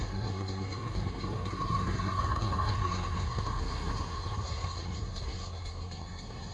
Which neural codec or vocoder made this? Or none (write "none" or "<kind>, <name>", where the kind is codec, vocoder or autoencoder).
codec, SNAC